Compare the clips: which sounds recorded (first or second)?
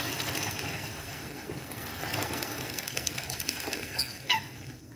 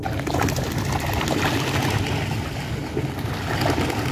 second